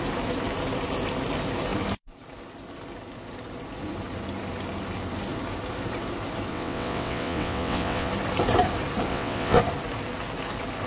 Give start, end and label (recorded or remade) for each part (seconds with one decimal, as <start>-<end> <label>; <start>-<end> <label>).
0.0-6.5 recorded; 6.5-8.1 remade; 8.1-9.1 recorded; 9.1-9.6 remade; 9.6-10.9 recorded